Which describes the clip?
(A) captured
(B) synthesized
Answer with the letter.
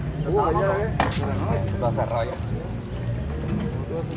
A